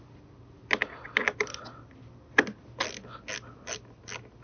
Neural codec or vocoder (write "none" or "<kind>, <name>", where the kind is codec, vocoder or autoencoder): none